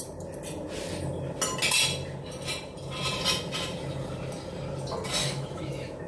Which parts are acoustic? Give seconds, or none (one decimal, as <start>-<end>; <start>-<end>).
0.0-5.2